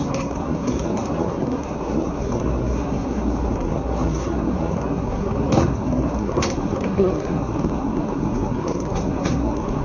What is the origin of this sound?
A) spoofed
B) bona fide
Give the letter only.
A